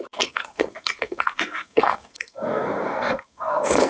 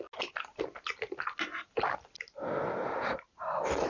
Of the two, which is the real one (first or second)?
second